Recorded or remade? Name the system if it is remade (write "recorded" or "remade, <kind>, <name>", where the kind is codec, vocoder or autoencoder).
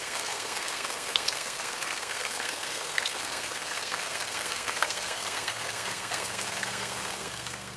remade, codec, SNAC